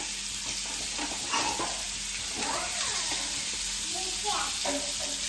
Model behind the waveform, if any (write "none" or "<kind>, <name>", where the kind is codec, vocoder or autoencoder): none